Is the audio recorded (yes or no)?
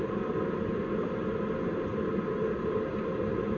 yes